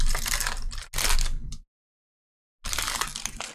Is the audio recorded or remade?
recorded